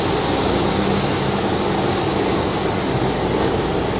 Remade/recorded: recorded